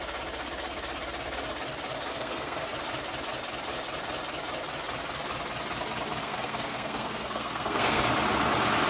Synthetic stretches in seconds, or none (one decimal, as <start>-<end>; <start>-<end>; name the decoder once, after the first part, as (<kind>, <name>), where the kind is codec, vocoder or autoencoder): 2.1-2.7 (codec, SNAC); 6.2-8.0